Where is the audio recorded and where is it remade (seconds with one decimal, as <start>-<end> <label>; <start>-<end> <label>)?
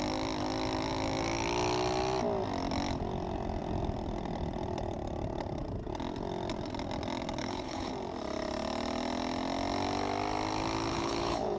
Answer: 0.0-7.4 recorded; 7.4-7.9 remade; 7.9-10.9 recorded; 10.9-11.6 remade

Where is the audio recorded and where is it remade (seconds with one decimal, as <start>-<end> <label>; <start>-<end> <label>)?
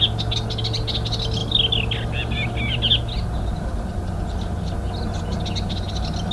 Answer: 0.0-6.3 recorded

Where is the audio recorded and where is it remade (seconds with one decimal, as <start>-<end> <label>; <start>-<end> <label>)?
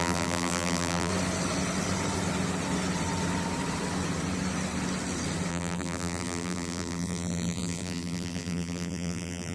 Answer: 0.0-1.1 remade; 1.1-5.5 recorded; 5.5-9.5 remade